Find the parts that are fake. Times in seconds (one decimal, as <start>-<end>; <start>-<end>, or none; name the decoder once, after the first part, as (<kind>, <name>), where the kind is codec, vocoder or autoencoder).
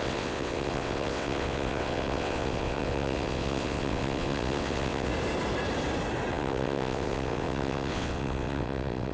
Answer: 0.0-5.1 (vocoder, WaveNeXt); 6.3-9.1